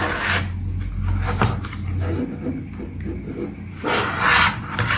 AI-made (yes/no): no